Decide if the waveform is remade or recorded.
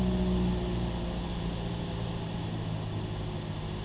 recorded